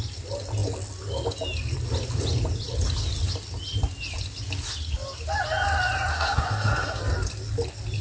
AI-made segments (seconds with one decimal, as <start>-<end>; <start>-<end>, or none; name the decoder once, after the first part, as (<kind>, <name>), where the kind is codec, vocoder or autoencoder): 6.1-7.0 (codec, SNAC)